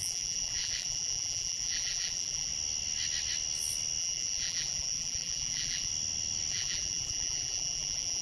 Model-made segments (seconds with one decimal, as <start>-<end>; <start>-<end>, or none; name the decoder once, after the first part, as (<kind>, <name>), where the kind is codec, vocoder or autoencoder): 0.0-2.5 (vocoder, BigVGAN v2); 4.0-5.9; 6.5-8.2